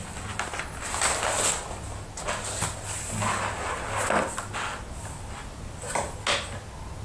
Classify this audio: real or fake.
real